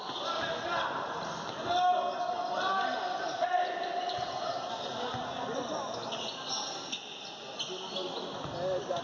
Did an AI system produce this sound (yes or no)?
no